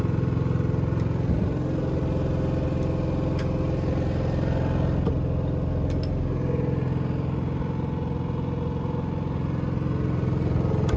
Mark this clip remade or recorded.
recorded